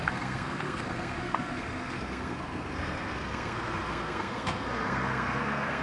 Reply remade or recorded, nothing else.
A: remade